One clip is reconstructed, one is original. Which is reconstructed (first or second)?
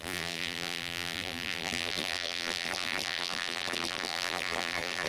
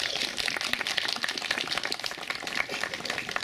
first